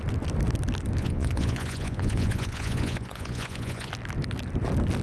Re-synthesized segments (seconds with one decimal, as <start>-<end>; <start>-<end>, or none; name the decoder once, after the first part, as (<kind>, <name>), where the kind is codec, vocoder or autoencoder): 1.0-3.9 (vocoder, Vocos)